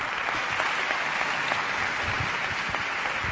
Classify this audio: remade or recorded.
recorded